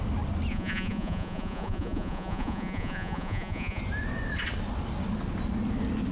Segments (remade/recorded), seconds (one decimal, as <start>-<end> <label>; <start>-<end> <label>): 0.0-0.5 recorded; 0.5-3.8 remade; 3.8-6.1 recorded

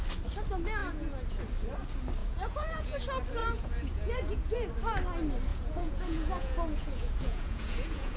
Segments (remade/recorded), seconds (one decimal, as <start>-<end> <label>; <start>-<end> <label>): 0.0-0.8 recorded; 0.8-1.4 remade; 1.4-2.2 recorded; 2.2-3.0 remade; 3.0-3.4 recorded; 3.4-4.7 remade; 4.7-5.5 recorded; 5.5-8.2 remade